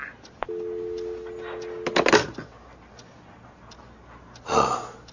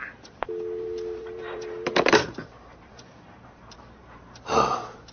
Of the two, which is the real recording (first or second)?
first